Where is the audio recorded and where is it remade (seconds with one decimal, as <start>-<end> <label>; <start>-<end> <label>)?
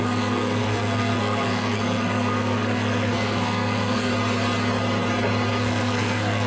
0.0-4.1 remade; 4.1-5.6 recorded; 5.6-6.5 remade